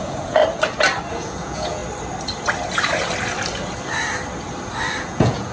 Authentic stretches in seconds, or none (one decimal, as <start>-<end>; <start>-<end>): 0.4-1.1; 1.8-5.0